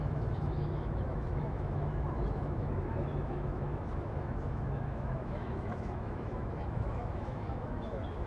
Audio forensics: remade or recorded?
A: remade